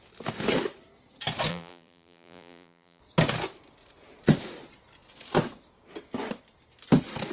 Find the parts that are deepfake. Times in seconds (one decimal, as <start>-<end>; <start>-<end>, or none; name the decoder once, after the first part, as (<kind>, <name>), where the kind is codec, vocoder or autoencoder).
1.5-3.0 (vocoder, BigVGAN v2)